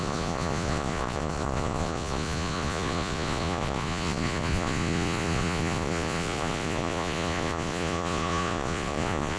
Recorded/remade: remade